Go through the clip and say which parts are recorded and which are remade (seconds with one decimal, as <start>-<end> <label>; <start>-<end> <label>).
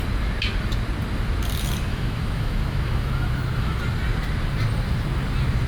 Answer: 0.0-1.9 recorded; 1.9-3.8 remade; 3.8-5.7 recorded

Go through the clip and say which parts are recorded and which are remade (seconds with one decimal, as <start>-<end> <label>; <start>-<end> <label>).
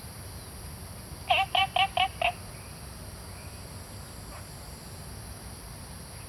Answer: 0.0-6.3 recorded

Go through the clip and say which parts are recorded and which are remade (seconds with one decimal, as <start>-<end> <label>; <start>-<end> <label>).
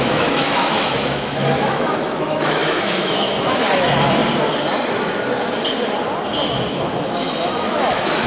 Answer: 0.0-4.2 remade; 4.2-6.7 recorded; 6.7-8.3 remade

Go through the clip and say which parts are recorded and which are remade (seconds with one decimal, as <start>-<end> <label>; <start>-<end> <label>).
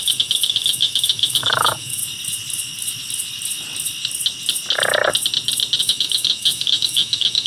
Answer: 0.0-2.0 remade; 2.0-5.8 recorded; 5.8-7.5 remade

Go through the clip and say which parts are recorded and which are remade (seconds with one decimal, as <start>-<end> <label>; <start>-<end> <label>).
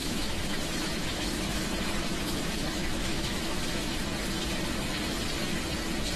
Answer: 0.0-1.6 remade; 1.6-2.1 recorded; 2.1-3.9 remade; 3.9-6.2 recorded